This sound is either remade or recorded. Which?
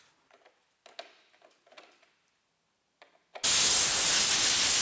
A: recorded